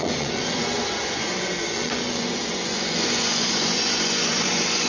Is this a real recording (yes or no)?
no